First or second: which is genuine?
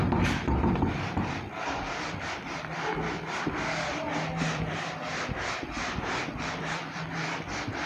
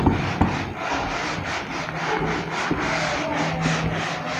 second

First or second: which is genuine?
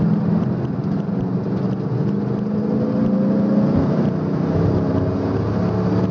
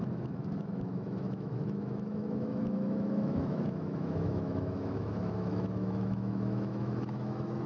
first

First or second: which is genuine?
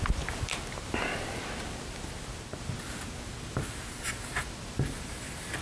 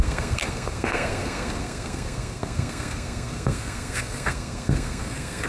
first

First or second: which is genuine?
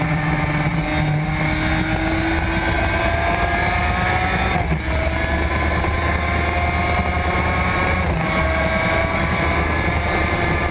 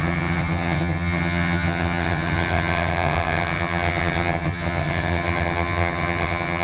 first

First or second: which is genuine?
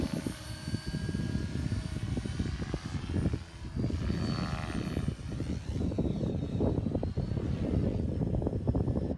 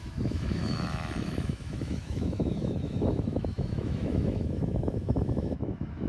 first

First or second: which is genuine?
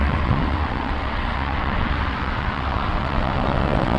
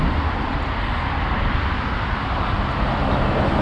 second